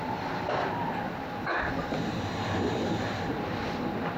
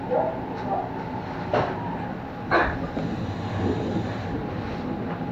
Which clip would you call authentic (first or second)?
second